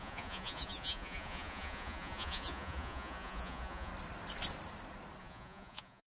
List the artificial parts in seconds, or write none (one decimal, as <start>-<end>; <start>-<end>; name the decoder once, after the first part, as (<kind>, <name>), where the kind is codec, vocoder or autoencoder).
0.0-3.9 (vocoder, Vocos); 5.2-6.1

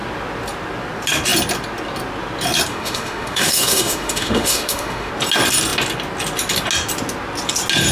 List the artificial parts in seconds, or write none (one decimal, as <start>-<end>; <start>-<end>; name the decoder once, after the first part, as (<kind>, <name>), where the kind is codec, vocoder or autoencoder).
2.7-5.1 (autoencoder, DAC-VAE)

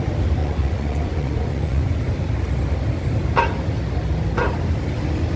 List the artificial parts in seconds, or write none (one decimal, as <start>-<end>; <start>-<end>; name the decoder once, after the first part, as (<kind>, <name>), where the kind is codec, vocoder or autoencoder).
0.4-2.0 (vocoder, Vocos)

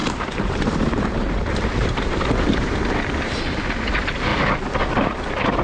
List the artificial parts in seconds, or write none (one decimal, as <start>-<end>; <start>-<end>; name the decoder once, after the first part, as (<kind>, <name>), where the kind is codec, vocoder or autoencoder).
0.0-3.4 (vocoder, BigVGAN v2)

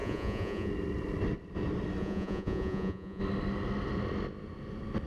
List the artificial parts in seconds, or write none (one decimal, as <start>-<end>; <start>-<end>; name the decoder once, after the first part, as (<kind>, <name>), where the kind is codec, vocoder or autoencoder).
0.0-0.7 (vocoder, Vocos); 2.0-3.2